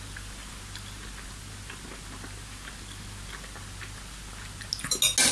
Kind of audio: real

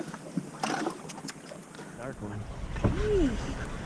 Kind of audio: real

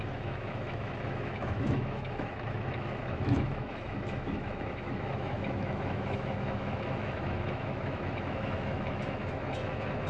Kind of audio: fake